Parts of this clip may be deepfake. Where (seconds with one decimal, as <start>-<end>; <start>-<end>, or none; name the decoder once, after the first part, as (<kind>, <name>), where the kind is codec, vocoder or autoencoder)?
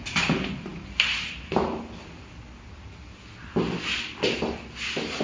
none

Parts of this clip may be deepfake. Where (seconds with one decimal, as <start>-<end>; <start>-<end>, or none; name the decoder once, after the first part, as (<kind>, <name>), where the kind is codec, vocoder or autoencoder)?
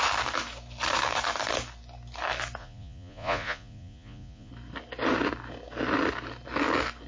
2.6-4.5 (vocoder, Vocos)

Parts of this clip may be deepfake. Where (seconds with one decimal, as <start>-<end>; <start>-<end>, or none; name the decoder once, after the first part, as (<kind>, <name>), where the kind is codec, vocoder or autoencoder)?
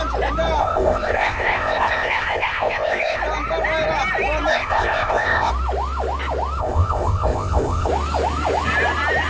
0.6-3.2 (codec, ZipCodec); 4.5-5.5; 6.6-7.9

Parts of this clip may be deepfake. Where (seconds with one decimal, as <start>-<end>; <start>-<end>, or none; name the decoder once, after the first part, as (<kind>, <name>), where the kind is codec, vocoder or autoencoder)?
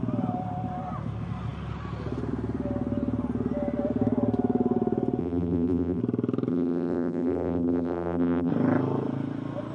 5.2-6.0 (vocoder, BigVGAN v2); 6.5-8.5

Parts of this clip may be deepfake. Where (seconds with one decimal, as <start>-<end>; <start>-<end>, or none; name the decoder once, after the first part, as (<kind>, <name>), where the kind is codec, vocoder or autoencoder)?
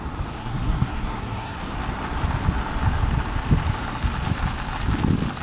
0.4-1.6 (codec, SNAC)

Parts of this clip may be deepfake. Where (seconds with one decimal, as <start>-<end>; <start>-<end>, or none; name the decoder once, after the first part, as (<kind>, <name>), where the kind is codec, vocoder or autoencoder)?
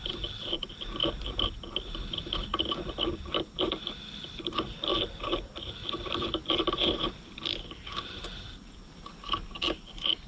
none